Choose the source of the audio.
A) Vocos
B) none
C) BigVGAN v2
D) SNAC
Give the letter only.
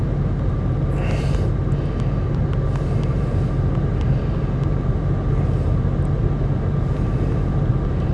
B